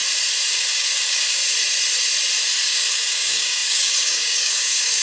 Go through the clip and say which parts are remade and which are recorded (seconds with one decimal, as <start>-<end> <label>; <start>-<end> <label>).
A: 0.0-0.5 recorded; 0.5-1.4 remade; 1.4-2.6 recorded; 2.6-5.0 remade